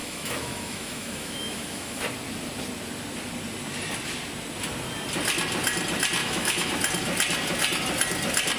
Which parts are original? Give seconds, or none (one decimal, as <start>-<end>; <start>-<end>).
2.0-6.2; 6.7-8.6